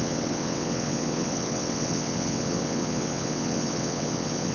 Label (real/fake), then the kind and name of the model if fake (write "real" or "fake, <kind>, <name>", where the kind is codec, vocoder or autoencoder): fake, vocoder, WaveNeXt